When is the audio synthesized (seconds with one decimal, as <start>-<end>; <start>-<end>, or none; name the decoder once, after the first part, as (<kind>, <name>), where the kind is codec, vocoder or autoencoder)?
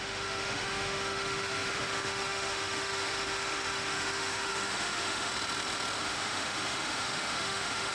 0.0-5.3 (autoencoder, DAC-VAE); 6.0-7.9